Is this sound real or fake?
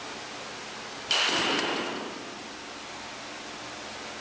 real